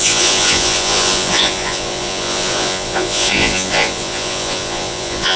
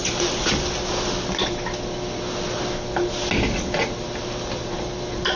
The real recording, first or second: second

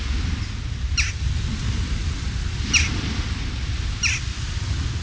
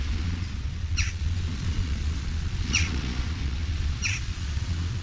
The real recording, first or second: first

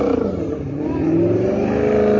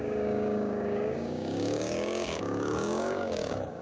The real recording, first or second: first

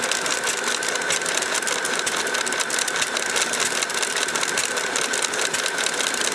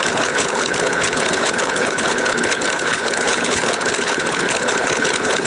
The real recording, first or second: first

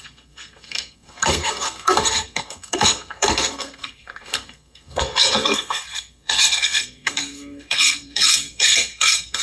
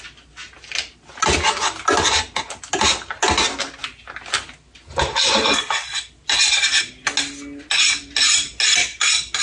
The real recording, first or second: second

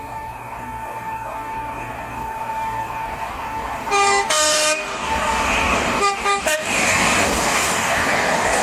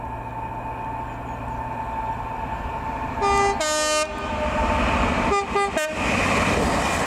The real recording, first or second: second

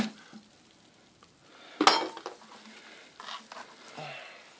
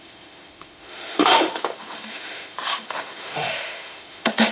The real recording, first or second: first